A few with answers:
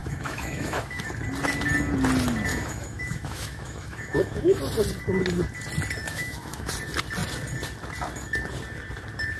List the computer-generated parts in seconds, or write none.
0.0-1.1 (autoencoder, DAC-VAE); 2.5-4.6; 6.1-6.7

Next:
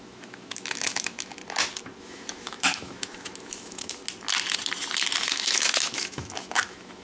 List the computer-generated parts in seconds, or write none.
0.0-1.4 (autoencoder, DAC-VAE); 2.0-4.0; 5.3-7.0

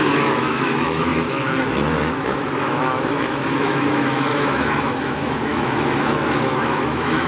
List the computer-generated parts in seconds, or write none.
0.0-7.3 (autoencoder, DAC-VAE)

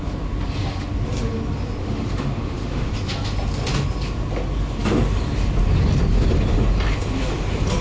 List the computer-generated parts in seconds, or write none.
1.8-2.9 (autoencoder, DAC-VAE)